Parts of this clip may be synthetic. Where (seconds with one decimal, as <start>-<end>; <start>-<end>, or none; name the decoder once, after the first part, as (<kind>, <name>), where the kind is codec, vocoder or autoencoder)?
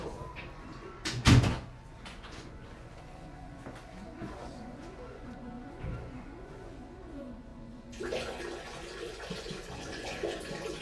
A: 0.0-10.8 (vocoder, Vocos)